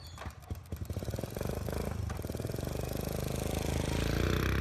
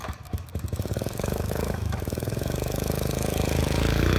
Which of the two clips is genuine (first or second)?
first